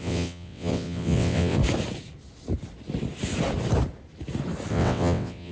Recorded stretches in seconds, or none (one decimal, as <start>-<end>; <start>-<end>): 1.6-4.7